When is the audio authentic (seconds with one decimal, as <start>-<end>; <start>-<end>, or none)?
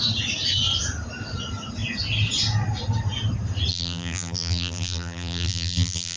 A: 0.0-3.7